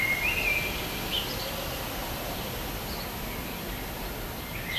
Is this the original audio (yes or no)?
yes